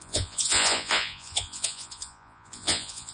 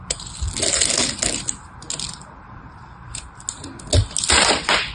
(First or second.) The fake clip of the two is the first